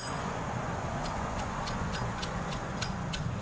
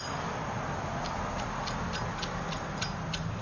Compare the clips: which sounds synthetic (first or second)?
first